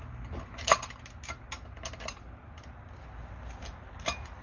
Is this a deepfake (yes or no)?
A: no